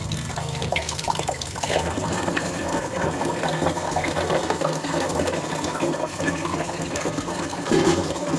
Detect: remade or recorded remade